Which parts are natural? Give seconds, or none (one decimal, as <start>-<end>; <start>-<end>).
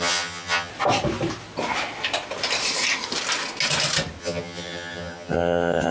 0.7-4.2